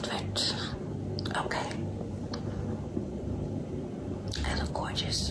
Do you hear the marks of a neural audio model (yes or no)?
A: no